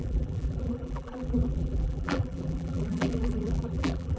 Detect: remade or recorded remade